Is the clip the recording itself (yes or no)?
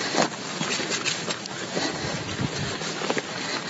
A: yes